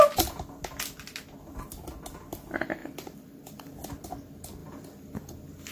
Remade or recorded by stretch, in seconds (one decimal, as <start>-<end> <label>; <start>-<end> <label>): 0.0-2.8 recorded; 2.8-3.9 remade; 3.9-4.6 recorded; 4.6-5.3 remade; 5.3-5.7 recorded